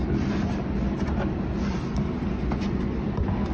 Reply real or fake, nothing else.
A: real